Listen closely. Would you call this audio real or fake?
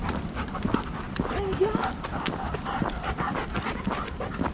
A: real